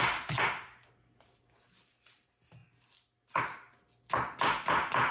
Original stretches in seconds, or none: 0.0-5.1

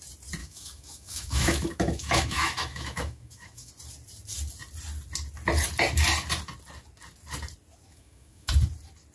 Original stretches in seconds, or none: 0.0-0.4; 3.7-7.9; 8.5-9.1